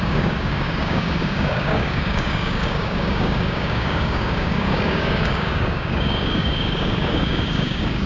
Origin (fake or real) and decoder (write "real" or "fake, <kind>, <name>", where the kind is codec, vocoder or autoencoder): fake, codec, DAC